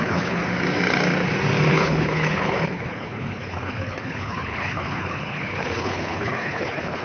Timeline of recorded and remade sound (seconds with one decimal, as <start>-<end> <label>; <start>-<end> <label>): 0.0-0.4 remade; 0.4-1.7 recorded; 1.7-7.0 remade